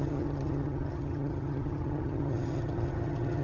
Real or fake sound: fake